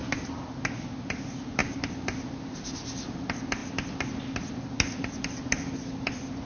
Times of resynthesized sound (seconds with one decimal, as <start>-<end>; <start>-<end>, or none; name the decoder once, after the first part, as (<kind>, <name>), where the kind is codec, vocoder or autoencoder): none